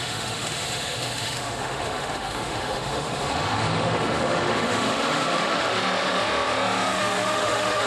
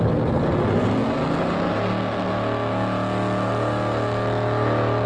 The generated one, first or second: first